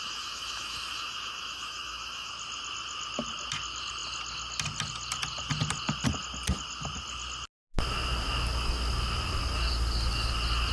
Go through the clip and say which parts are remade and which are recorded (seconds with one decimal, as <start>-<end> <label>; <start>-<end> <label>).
0.0-2.3 remade; 2.3-10.7 recorded